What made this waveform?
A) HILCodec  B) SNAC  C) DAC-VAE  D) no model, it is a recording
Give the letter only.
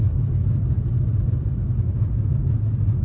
D